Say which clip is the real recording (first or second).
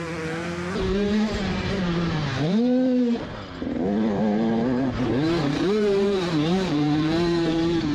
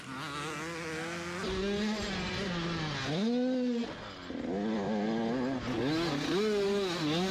second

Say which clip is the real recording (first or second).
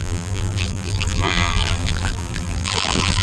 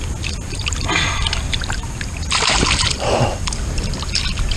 second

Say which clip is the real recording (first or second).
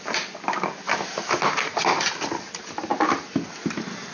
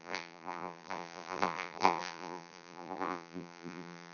first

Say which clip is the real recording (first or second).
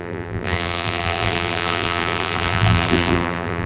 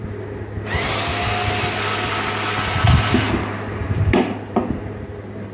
second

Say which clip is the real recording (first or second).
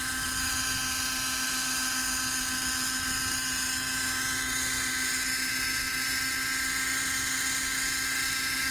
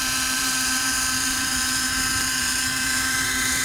first